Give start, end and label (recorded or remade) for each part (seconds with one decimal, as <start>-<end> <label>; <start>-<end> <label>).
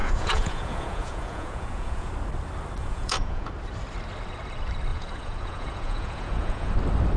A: 0.0-2.1 remade; 2.1-2.8 recorded; 2.8-3.5 remade; 3.5-4.9 recorded; 4.9-6.7 remade; 6.7-7.2 recorded